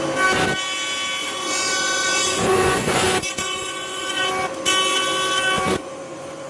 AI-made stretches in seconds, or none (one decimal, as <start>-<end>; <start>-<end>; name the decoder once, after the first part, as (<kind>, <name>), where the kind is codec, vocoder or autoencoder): 1.2-4.3 (vocoder, Vocos); 5.8-6.5